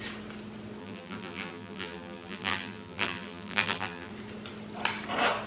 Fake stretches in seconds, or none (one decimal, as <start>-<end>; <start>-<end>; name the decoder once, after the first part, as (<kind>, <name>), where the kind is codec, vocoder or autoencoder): 0.8-4.1 (vocoder, BigVGAN v2)

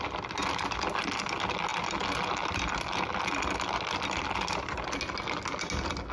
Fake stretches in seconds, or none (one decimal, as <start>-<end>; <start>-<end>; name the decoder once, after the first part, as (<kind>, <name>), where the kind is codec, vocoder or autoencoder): none

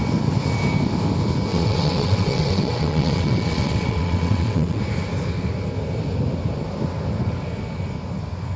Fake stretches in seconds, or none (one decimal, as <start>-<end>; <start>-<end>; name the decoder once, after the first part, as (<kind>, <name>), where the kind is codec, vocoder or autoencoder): 1.5-4.8 (vocoder, WaveNeXt)

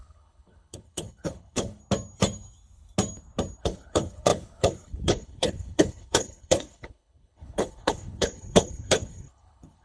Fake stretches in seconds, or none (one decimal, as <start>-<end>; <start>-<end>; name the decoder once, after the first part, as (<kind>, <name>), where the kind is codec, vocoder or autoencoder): 0.0-1.8 (codec, HILCodec); 3.6-9.8

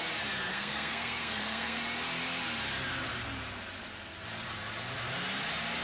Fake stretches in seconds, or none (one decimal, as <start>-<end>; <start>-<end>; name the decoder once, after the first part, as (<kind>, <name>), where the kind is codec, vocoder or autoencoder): 0.5-1.8 (codec, SNAC)